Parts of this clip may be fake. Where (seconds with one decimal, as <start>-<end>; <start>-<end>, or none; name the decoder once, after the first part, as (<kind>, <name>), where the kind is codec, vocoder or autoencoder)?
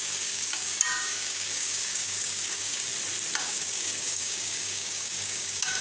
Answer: 0.0-2.9 (codec, DAC); 3.4-5.8